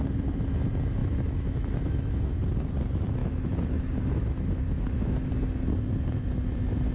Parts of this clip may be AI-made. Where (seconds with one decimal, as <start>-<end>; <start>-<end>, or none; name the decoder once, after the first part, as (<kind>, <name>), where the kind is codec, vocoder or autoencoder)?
1.0-2.4 (autoencoder, DAC-VAE); 3.2-5.3